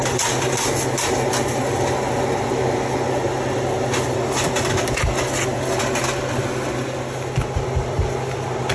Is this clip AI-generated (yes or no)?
no